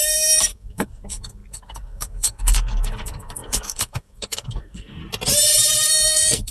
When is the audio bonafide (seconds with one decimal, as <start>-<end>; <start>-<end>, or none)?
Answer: 5.0-5.9